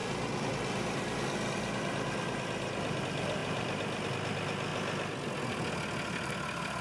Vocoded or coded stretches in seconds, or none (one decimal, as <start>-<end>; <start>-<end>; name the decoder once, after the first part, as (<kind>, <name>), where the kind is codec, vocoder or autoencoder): 3.4-4.1 (vocoder, BigVGAN v2)